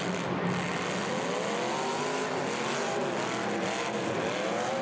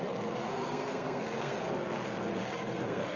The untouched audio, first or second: first